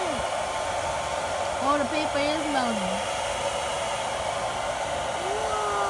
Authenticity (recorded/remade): recorded